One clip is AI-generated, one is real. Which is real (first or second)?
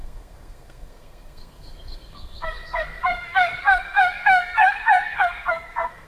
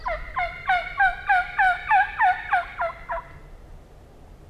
second